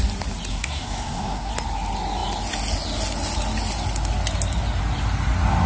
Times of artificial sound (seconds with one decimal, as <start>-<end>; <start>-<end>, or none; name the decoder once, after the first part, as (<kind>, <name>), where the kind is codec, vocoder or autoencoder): 0.5-1.5 (codec, SNAC)